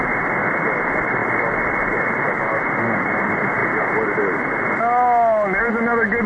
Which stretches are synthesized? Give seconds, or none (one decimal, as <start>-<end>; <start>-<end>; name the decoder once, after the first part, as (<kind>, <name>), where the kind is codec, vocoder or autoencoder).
none